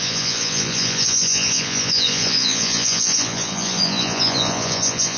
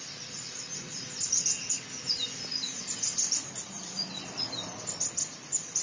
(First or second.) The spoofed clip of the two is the first